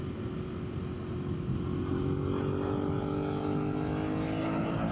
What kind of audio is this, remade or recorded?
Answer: recorded